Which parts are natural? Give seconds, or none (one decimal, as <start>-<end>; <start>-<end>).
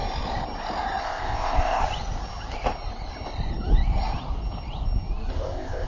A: 0.0-1.0; 1.8-5.3